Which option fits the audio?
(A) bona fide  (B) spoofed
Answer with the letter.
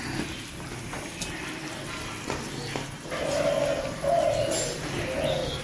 A